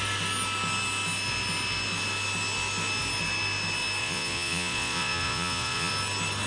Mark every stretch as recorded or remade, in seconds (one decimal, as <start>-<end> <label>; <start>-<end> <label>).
0.0-4.0 recorded; 4.0-5.9 remade; 5.9-6.5 recorded